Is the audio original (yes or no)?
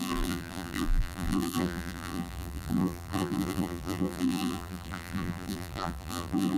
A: no